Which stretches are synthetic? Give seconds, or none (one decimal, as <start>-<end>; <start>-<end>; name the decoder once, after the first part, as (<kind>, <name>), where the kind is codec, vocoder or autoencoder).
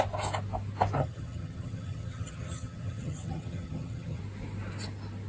1.0-4.2 (vocoder, HiFi-GAN)